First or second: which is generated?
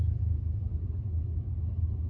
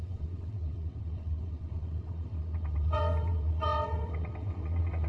second